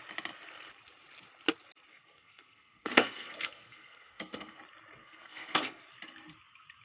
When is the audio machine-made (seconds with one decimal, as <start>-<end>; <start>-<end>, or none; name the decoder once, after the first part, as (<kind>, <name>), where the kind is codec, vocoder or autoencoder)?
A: 1.9-4.6 (codec, SNAC); 5.0-5.8